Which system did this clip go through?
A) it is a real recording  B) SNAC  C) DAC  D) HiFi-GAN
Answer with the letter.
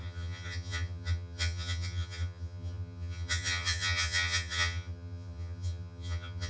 D